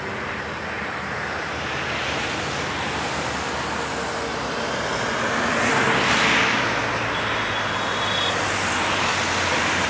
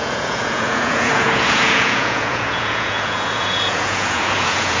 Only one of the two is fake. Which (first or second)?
second